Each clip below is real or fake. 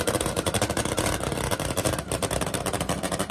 fake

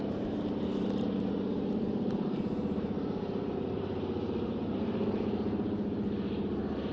fake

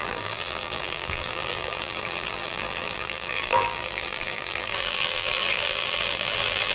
fake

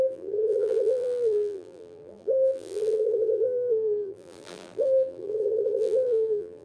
fake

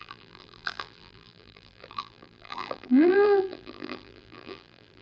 fake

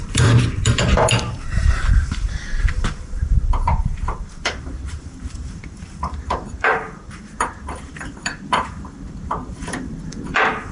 fake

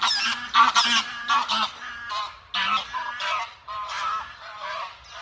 real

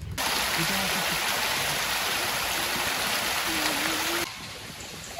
real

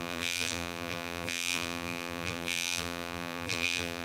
fake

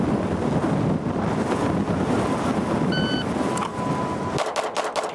real